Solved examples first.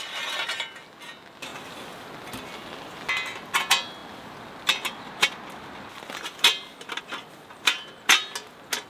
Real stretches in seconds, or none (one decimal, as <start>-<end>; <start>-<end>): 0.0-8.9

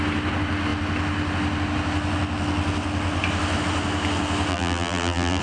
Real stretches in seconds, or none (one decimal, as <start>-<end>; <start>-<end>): 0.0-4.5

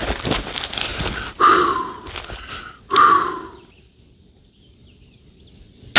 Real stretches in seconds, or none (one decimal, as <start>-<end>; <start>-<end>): 0.9-3.4; 4.8-6.0

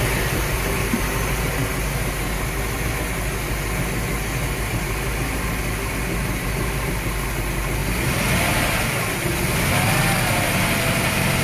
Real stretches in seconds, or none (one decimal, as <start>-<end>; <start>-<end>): 1.6-5.9